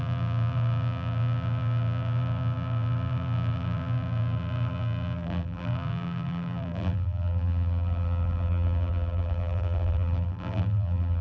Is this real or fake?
fake